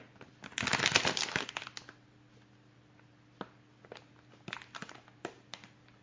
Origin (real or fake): real